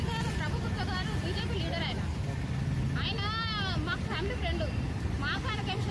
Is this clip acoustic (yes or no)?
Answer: yes